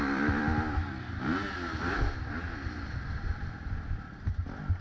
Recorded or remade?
recorded